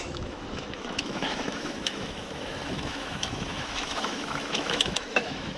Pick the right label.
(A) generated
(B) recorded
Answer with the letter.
A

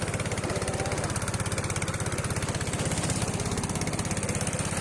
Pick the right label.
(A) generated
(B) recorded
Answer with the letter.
B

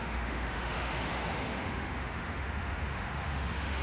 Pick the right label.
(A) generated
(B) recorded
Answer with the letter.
A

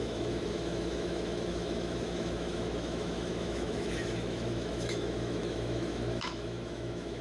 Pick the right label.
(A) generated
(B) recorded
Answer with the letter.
A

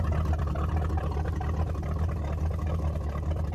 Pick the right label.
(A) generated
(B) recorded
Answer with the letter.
B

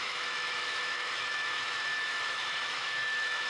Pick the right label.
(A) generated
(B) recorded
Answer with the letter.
A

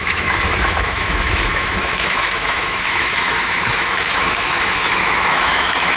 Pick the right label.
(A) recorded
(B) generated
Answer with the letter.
B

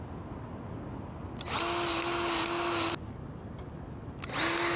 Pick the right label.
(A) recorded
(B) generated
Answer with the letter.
A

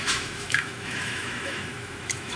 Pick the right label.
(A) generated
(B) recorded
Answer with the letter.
A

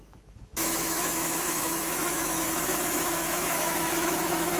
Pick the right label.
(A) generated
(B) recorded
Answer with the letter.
A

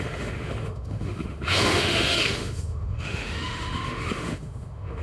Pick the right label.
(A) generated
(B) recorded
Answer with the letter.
A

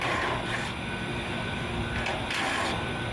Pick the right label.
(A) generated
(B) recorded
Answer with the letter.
B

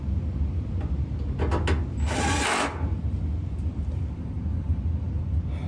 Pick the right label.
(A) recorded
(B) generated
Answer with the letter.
A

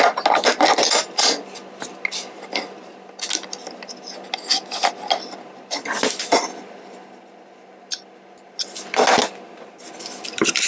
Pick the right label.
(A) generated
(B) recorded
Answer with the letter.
B